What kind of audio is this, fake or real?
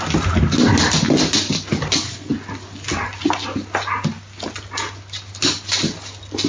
real